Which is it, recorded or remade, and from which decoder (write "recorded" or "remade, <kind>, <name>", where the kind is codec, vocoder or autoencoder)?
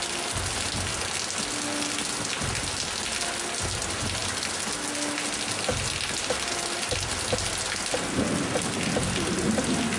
recorded